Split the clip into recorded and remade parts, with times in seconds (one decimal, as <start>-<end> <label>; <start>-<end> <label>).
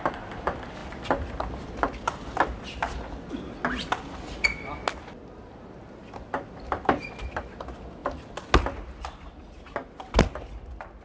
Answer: 0.0-11.0 recorded